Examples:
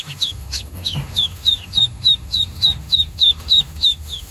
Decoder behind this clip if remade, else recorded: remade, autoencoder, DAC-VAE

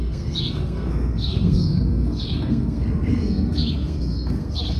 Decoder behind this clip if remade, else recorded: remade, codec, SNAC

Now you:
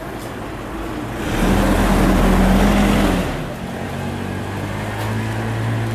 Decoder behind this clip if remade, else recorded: recorded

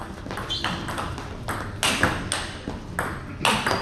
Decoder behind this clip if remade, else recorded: recorded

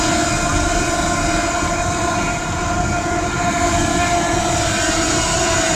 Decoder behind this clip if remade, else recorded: remade, vocoder, BigVGAN v2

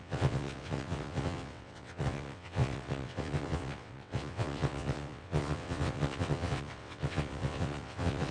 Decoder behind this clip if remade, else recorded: remade, vocoder, WaveNeXt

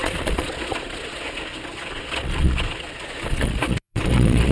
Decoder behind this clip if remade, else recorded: remade, vocoder, Vocos